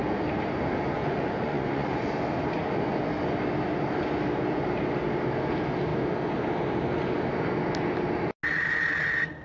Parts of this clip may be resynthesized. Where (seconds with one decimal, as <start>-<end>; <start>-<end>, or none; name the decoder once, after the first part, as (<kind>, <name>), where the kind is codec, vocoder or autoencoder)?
1.0-2.1 (vocoder, Vocos)